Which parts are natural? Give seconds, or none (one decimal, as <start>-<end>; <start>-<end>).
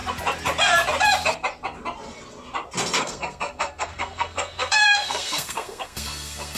0.0-3.0